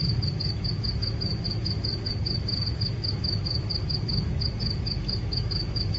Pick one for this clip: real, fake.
fake